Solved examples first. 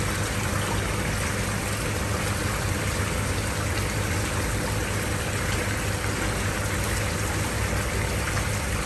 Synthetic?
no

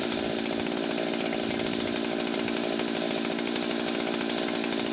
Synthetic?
no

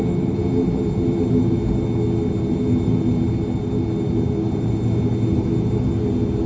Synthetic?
no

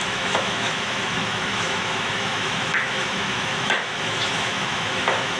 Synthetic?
yes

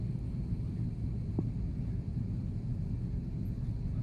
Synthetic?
no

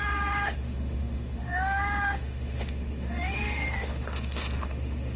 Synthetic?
yes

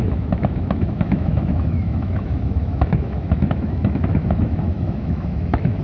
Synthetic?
yes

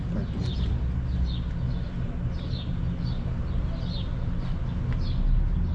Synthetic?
no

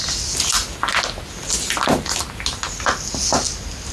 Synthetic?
no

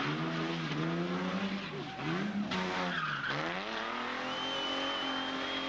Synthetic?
no